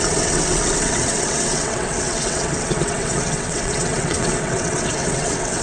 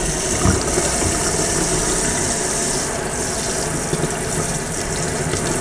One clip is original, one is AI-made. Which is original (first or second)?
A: second